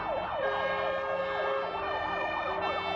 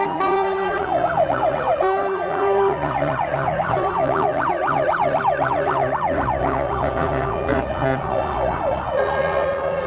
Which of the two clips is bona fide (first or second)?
first